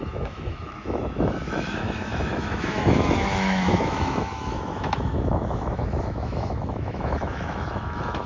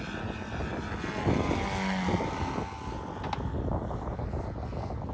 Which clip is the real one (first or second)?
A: second